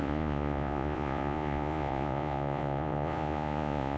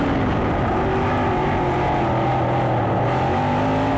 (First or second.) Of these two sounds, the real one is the second